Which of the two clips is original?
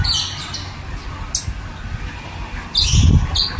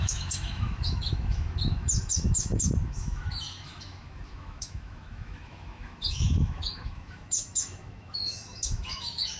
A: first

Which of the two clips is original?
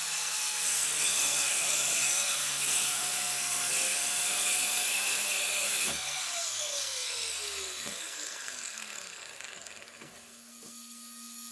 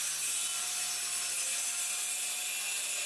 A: second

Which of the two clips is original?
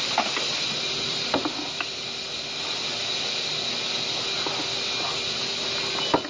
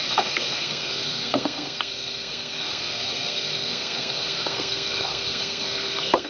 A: first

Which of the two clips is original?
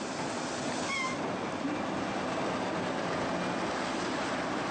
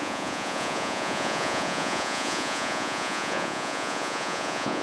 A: first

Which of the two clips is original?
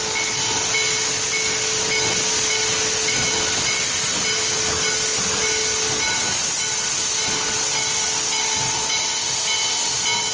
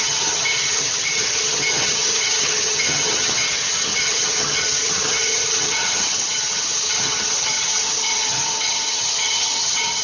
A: first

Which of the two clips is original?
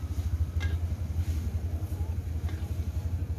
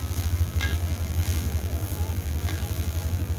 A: first